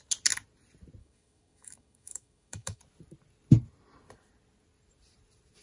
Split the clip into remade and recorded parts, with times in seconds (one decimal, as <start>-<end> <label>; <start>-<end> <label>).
0.0-1.0 recorded; 1.0-2.8 remade; 2.8-5.6 recorded